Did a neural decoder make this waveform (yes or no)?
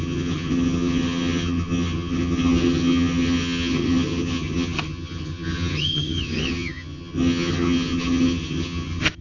yes